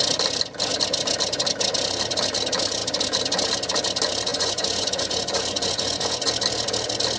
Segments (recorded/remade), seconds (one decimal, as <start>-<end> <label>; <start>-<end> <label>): 0.0-4.3 recorded; 4.3-6.3 remade; 6.3-7.2 recorded